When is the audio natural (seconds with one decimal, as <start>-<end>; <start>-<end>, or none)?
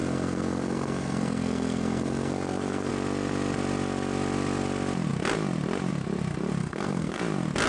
2.9-6.6; 7.2-7.7